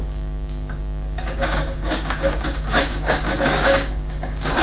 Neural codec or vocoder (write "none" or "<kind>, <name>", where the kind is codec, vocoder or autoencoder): codec, DAC